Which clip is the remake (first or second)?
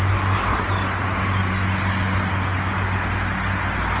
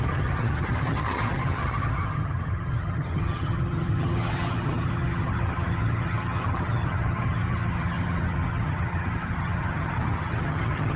second